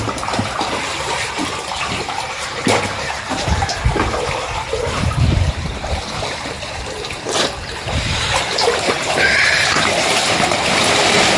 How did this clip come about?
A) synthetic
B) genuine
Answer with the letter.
A